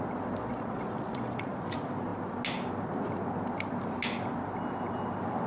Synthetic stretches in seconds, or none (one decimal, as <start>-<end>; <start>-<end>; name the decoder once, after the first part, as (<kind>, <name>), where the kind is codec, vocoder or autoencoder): 0.4-1.6 (vocoder, Vocos)